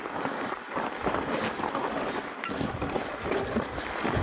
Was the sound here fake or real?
real